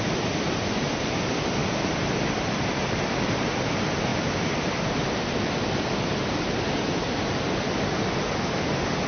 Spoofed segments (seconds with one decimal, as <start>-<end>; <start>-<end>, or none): 0.0-9.1